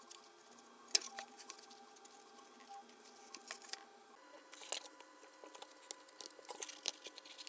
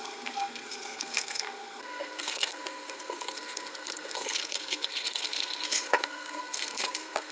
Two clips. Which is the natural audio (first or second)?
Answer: first